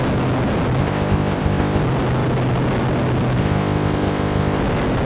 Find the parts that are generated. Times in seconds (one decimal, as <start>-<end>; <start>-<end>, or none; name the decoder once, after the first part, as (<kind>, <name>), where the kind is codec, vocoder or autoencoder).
0.8-1.8 (codec, ZipCodec); 3.4-4.6